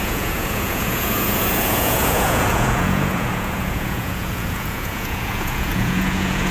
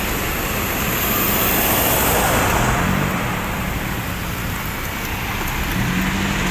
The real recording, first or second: second